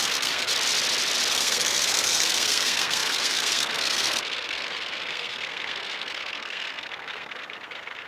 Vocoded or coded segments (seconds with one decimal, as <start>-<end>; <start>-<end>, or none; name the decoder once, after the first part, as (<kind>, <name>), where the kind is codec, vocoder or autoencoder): 0.0-0.5 (codec, SNAC); 1.3-8.1